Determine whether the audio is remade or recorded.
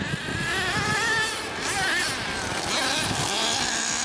recorded